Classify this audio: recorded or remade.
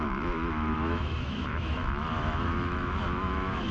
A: remade